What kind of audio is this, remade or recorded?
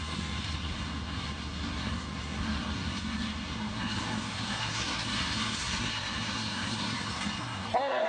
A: remade